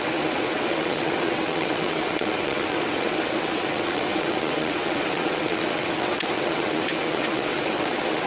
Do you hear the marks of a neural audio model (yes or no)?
yes